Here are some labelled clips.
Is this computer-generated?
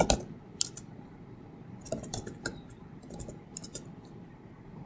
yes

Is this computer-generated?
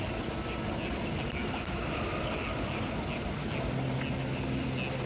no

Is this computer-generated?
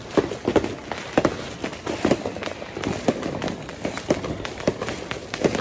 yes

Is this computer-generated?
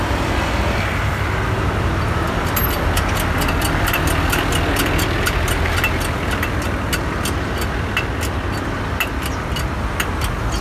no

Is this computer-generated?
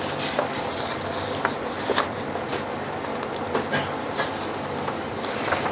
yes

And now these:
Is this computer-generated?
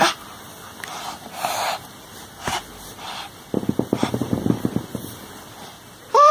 yes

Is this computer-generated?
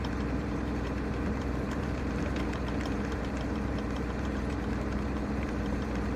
yes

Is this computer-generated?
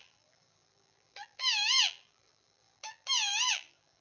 yes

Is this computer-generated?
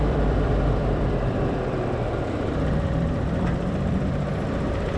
yes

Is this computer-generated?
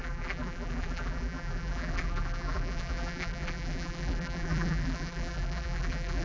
yes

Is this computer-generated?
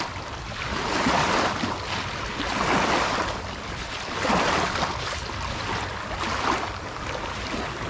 no